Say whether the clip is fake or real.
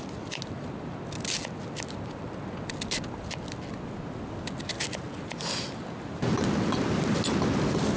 real